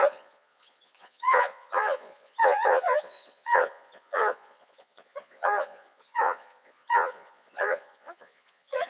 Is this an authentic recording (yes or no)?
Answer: no